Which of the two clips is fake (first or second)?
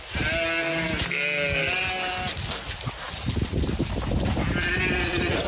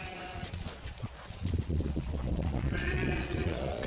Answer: second